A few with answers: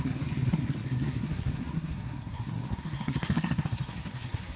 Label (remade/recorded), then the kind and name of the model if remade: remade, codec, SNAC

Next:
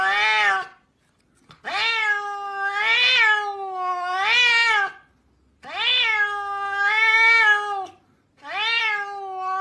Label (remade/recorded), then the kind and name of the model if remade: recorded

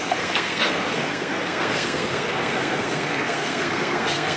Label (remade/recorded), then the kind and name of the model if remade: remade, codec, SNAC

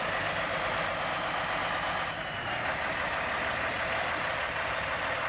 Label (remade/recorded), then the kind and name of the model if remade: recorded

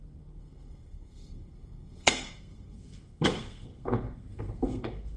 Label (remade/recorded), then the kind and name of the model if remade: remade, codec, SNAC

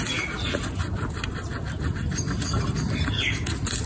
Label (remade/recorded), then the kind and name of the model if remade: recorded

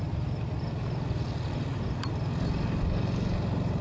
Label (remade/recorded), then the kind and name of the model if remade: recorded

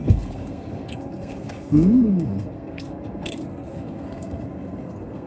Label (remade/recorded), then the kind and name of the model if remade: remade, codec, SNAC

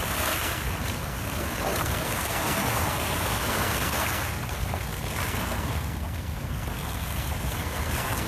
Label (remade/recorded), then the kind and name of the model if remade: remade, codec, SNAC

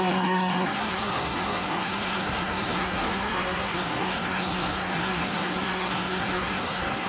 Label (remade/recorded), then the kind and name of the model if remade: remade, codec, SNAC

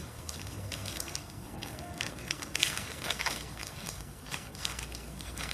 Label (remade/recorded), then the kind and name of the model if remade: remade, codec, SNAC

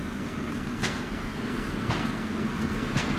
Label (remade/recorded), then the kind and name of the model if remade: remade, codec, SNAC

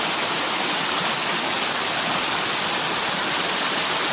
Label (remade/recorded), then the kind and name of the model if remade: recorded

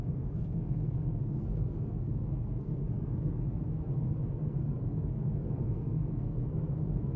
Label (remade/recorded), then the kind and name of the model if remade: remade, codec, SNAC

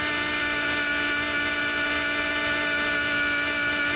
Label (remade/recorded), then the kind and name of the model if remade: recorded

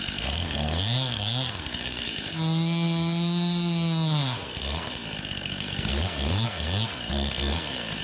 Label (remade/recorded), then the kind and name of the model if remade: remade, codec, SNAC